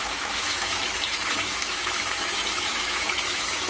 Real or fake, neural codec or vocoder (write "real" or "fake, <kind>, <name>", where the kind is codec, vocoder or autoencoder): fake, autoencoder, DAC-VAE